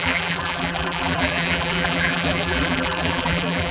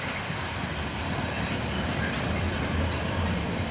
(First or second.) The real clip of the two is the second